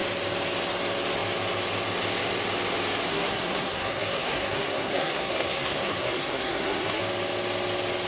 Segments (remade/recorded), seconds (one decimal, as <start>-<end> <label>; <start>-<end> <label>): 0.0-3.1 recorded; 3.1-7.0 remade; 7.0-8.1 recorded